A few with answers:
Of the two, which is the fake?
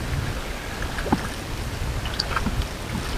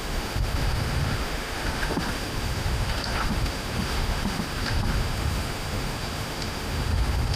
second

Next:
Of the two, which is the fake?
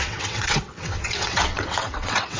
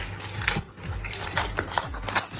first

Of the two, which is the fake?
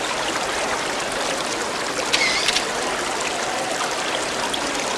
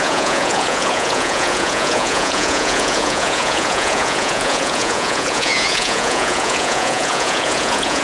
second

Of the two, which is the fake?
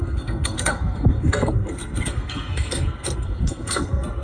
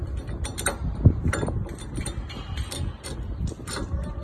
first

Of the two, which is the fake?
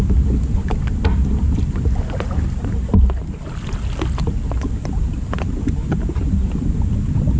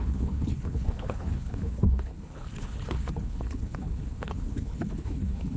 second